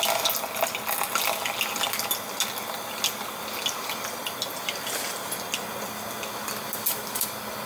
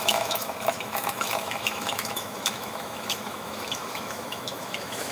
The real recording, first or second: first